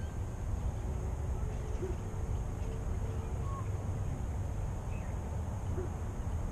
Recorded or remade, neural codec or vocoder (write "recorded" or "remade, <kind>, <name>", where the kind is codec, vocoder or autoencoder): recorded